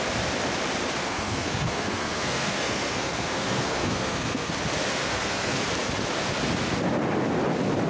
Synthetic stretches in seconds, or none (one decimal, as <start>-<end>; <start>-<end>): 1.0-4.5; 5.0-5.6